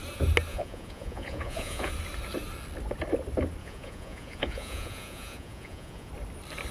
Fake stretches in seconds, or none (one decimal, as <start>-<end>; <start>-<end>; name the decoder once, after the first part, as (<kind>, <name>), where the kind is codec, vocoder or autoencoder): 0.5-1.9 (vocoder, Vocos); 3.6-6.1